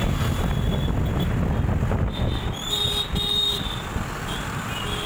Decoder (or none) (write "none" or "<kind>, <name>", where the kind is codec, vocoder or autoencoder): none